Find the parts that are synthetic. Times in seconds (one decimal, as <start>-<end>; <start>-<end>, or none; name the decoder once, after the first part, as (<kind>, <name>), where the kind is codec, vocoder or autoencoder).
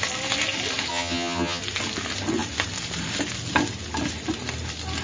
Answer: 0.9-1.6 (vocoder, HiFi-GAN)